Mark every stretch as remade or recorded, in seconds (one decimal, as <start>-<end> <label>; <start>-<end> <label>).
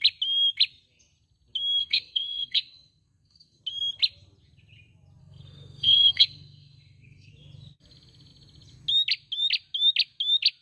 0.0-1.8 recorded; 1.8-3.6 remade; 3.6-5.2 recorded; 5.2-7.3 remade; 7.3-10.6 recorded